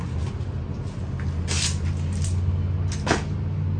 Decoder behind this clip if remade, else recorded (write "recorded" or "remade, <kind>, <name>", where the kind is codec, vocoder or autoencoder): recorded